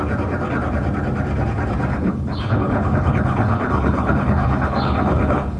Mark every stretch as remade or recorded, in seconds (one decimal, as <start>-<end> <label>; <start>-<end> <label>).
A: 0.0-1.9 recorded; 1.9-5.6 remade

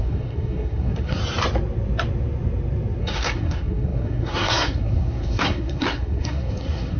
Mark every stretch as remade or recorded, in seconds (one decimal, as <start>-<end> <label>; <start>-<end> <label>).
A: 0.0-1.2 remade; 1.2-3.0 recorded; 3.0-7.0 remade

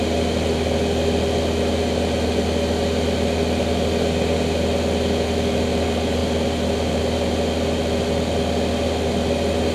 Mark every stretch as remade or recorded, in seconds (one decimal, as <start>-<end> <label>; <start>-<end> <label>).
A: 0.0-9.7 recorded

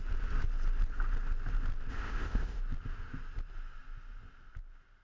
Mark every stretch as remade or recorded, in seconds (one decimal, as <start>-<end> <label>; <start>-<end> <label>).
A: 0.0-1.9 recorded; 1.9-2.6 remade; 2.6-5.0 recorded

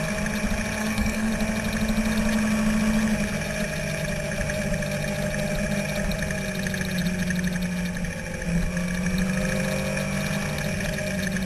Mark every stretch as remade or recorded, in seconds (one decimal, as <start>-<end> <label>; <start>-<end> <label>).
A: 0.0-0.8 recorded; 0.8-1.3 remade; 1.3-11.5 recorded